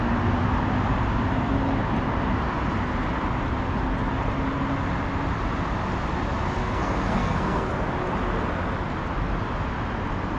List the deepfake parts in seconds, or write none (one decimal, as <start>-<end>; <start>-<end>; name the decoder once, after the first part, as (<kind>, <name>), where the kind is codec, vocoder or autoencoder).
6.6-7.7 (codec, SNAC)